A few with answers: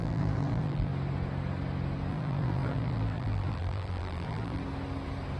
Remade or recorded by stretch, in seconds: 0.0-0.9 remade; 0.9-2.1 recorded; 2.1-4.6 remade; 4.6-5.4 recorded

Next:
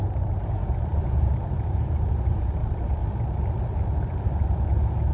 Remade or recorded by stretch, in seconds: 0.0-2.6 remade; 2.6-5.1 recorded